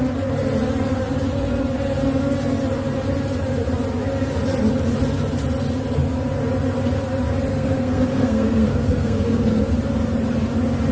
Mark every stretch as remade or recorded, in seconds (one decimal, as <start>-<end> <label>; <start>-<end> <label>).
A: 0.0-7.5 recorded; 7.5-9.6 remade; 9.6-10.9 recorded